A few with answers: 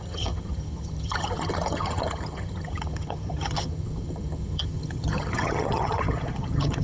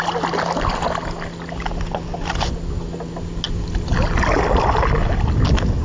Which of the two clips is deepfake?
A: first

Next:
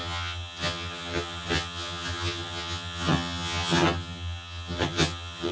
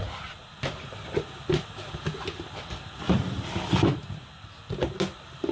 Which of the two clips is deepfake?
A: first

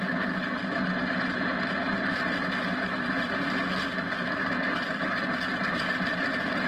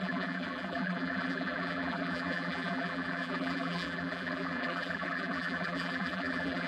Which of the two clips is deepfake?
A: second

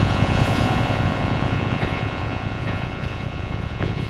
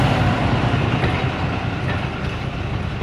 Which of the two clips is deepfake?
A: first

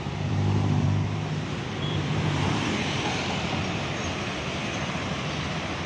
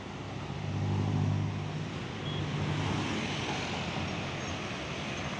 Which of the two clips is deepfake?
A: first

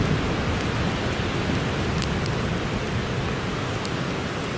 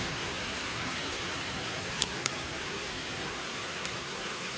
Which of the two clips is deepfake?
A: second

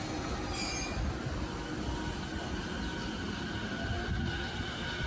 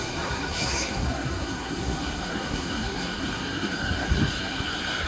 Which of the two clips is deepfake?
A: second